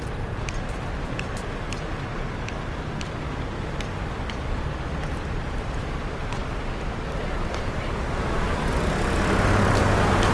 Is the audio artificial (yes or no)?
no